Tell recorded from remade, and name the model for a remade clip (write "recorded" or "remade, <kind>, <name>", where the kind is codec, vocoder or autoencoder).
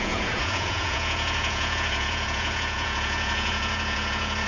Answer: remade, vocoder, Vocos